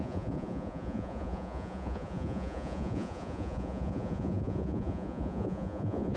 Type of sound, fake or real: fake